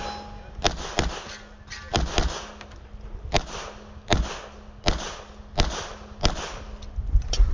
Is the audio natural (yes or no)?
yes